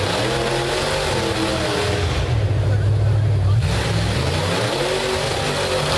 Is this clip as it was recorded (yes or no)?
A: yes